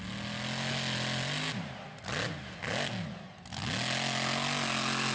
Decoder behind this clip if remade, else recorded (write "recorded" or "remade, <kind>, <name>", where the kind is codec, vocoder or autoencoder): recorded